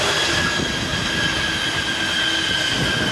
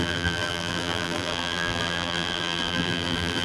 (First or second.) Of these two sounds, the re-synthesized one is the second